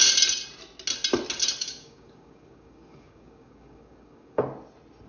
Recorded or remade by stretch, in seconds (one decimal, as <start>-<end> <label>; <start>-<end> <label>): 0.0-1.6 recorded; 1.6-4.4 remade; 4.4-5.1 recorded